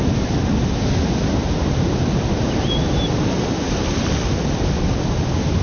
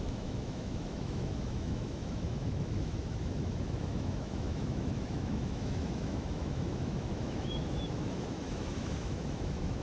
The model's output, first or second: second